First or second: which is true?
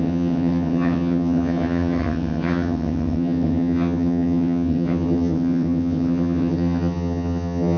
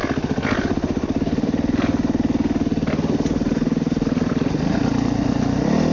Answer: second